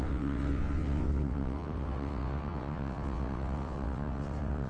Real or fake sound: fake